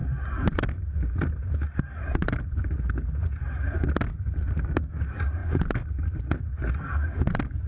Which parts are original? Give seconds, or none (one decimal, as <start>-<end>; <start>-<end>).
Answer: 0.0-4.4; 5.0-7.7